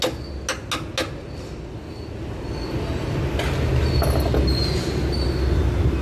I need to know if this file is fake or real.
real